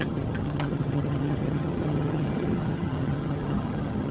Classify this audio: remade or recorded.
remade